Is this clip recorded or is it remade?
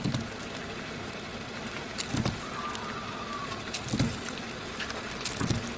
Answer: recorded